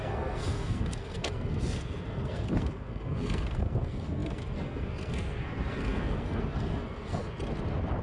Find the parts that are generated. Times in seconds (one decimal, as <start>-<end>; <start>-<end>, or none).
0.0-7.2